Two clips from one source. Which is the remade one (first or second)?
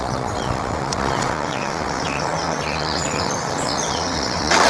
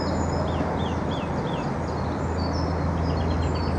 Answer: first